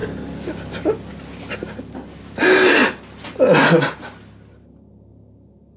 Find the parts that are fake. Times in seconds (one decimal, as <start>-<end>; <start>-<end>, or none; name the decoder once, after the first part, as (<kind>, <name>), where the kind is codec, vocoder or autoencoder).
none